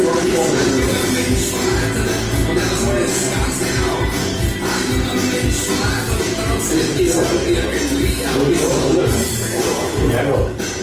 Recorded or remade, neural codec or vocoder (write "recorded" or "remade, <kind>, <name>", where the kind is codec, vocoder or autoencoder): recorded